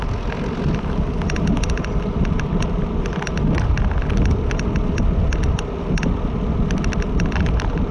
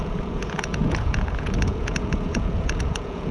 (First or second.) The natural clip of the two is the first